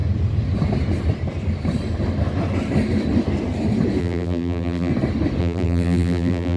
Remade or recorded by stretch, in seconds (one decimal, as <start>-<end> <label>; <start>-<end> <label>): 0.0-4.0 recorded; 4.0-4.9 remade; 4.9-5.4 recorded; 5.4-6.6 remade